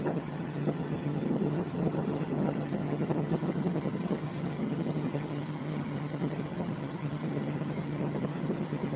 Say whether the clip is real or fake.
fake